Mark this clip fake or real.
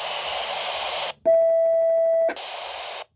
real